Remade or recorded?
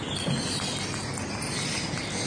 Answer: recorded